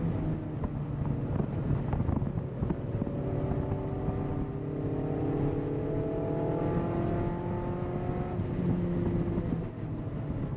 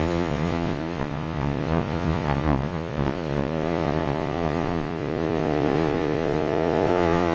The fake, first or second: second